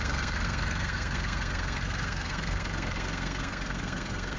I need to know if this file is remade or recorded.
remade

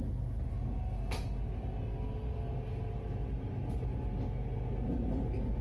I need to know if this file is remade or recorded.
recorded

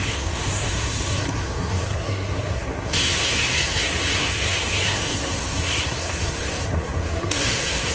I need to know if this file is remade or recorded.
remade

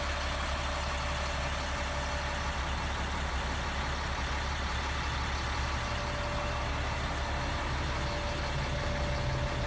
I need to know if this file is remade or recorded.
recorded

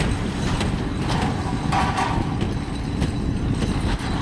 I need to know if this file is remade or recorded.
recorded